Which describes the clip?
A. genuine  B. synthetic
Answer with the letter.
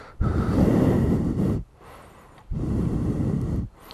B